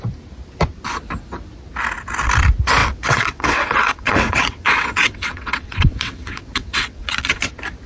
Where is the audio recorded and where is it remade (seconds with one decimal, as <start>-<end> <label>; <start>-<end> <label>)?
0.0-2.8 recorded; 2.8-7.5 remade; 7.5-7.9 recorded